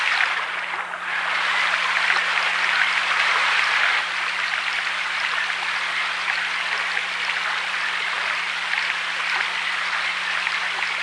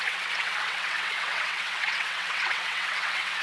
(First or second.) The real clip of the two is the first